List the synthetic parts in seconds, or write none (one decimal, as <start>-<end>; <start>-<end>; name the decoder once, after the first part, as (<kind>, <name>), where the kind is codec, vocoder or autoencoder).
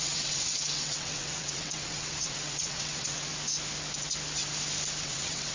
0.0-3.3 (vocoder, WaveNeXt); 5.0-5.5